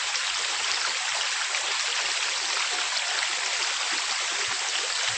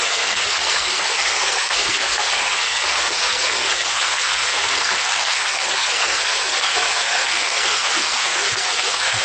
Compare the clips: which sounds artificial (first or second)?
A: second